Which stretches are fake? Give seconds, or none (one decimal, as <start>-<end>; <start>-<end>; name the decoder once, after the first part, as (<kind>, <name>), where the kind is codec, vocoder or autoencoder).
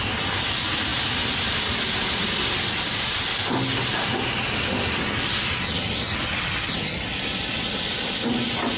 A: 0.9-6.0 (vocoder, BigVGAN v2)